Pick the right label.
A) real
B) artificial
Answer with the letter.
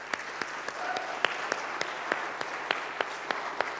A